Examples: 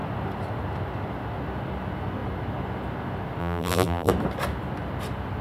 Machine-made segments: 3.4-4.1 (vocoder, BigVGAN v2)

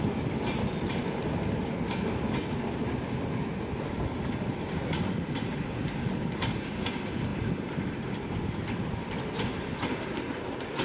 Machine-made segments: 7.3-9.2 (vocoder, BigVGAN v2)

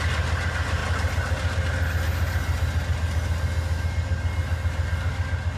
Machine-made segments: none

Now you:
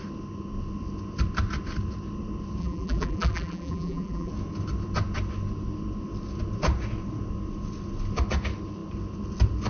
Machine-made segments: 2.6-4.3 (vocoder, BigVGAN v2)

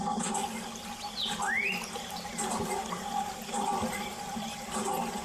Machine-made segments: none